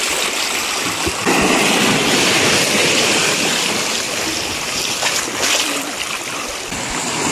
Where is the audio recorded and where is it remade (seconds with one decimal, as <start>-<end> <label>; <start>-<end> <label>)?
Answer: 0.0-2.8 recorded; 2.8-4.2 remade; 4.2-7.3 recorded